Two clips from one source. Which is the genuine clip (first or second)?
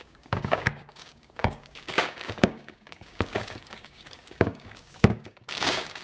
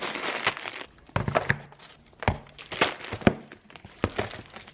second